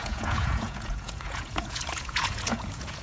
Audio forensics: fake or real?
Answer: fake